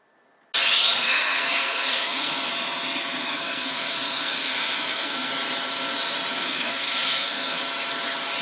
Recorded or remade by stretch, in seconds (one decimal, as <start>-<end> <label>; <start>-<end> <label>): 0.0-0.8 recorded; 0.8-2.5 remade; 2.5-3.2 recorded; 3.2-5.3 remade; 5.3-6.3 recorded; 6.3-7.6 remade; 7.6-8.4 recorded